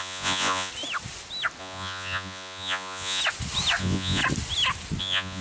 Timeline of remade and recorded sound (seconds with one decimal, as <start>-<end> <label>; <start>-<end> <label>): 0.0-0.7 remade; 0.7-1.6 recorded; 1.6-3.2 remade; 3.2-3.8 recorded; 3.8-4.2 remade; 4.2-5.0 recorded; 5.0-5.4 remade